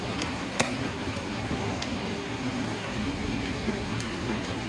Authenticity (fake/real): fake